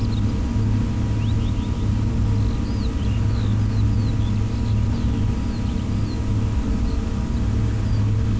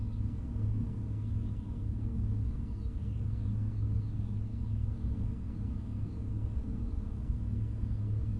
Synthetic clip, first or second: second